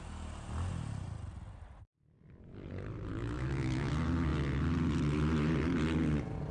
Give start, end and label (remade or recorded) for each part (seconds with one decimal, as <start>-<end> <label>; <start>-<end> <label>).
0.0-3.1 recorded; 3.1-3.9 remade; 3.9-6.5 recorded